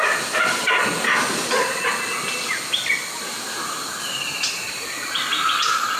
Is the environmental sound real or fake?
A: real